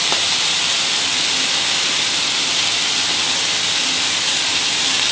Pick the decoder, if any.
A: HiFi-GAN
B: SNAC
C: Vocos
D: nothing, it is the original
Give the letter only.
D